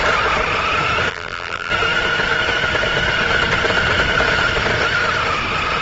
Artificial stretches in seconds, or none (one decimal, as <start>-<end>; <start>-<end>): 1.1-1.7